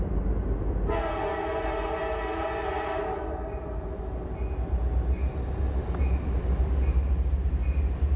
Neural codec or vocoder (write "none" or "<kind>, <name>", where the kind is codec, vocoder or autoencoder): none